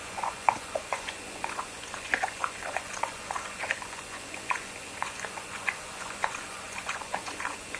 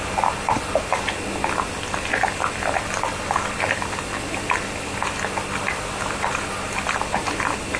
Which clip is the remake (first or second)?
first